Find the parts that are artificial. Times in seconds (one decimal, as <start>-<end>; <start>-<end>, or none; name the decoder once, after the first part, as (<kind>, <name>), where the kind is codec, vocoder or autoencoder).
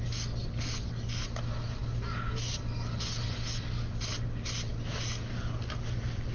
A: none